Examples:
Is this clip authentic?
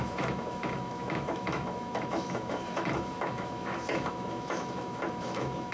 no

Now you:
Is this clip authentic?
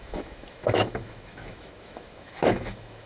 no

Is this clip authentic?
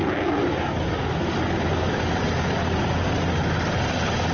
yes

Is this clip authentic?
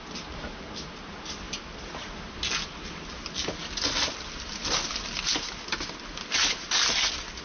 yes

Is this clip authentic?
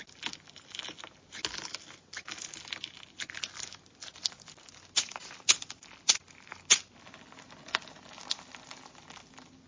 yes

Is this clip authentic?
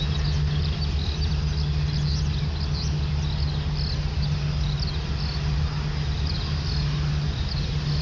yes